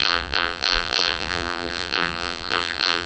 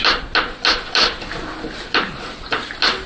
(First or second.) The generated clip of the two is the first